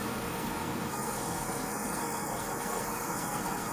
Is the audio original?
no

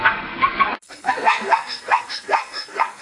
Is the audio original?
no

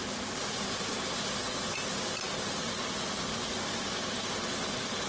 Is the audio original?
yes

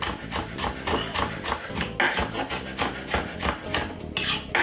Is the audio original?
yes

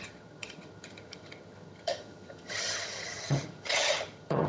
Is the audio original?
no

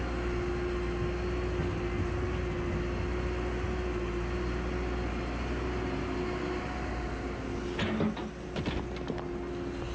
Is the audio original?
yes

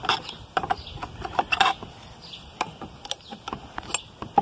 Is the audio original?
yes